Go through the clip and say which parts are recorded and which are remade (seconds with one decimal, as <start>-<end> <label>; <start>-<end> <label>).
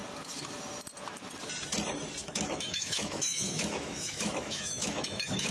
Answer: 0.0-2.2 recorded; 2.2-5.5 remade